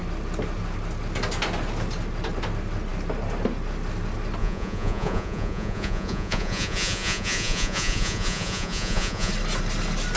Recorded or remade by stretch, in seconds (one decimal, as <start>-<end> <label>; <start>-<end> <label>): 0.0-4.4 recorded; 4.4-9.3 remade; 9.3-10.2 recorded